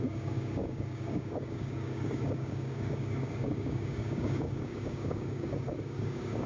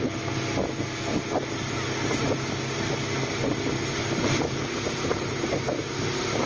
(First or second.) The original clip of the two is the second